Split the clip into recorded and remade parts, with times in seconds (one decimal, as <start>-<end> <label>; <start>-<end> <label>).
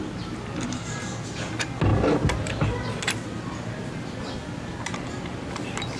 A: 0.0-6.0 recorded